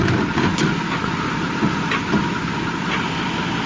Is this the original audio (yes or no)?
yes